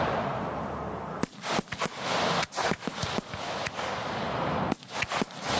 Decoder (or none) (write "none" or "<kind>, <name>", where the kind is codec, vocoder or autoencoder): none